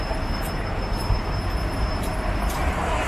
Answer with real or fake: fake